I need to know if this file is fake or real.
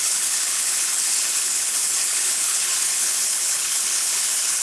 fake